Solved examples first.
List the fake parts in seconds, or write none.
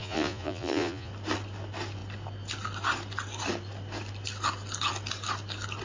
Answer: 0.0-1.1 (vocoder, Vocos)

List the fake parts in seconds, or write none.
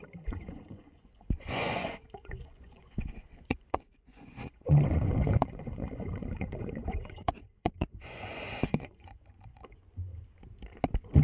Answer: 0.0-10.1 (vocoder, Vocos)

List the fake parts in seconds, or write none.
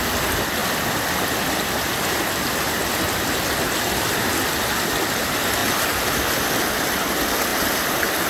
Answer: 0.6-2.7 (vocoder, BigVGAN v2); 5.6-6.4; 7.5-8.3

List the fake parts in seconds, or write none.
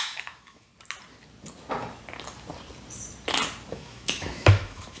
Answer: 0.0-0.7 (autoencoder, DAC-VAE); 3.7-5.0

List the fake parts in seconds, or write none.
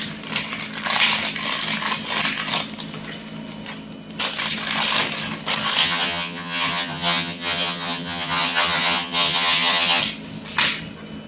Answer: 5.8-10.0 (vocoder, HiFi-GAN)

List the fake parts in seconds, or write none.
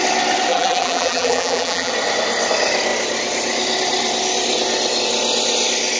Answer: 0.5-1.9 (vocoder, BigVGAN v2)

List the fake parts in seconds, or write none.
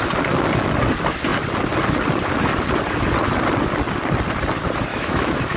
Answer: 4.9-5.6 (autoencoder, DAC-VAE)